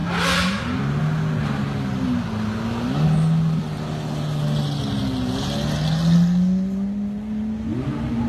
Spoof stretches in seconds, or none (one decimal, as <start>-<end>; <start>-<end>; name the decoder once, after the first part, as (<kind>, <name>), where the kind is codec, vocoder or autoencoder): none